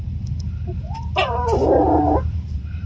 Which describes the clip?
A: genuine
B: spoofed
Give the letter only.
B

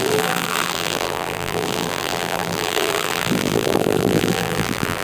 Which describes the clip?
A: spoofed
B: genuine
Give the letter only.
A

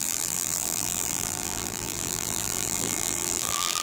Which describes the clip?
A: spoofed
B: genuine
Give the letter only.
A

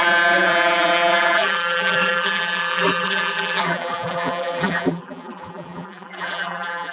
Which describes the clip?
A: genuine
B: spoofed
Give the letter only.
B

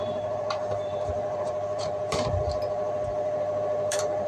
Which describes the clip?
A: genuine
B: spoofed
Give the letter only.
B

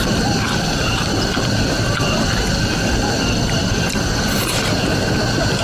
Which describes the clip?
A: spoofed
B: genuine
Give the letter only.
B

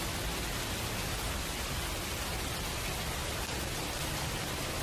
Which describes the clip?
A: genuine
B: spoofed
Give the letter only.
A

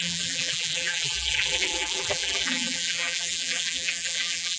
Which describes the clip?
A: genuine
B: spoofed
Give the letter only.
B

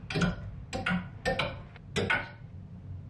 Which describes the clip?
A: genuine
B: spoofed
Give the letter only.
A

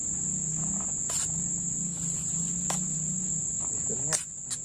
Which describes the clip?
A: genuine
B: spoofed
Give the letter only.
A